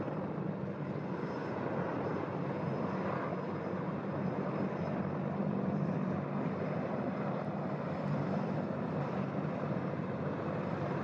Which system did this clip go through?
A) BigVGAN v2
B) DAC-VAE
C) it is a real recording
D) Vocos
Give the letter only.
C